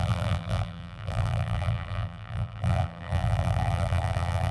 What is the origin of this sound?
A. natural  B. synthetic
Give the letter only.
B